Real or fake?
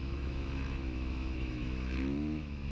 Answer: fake